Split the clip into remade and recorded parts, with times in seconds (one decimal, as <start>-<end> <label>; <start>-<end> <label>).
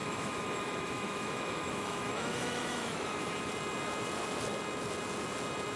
0.0-3.5 remade; 3.5-5.8 recorded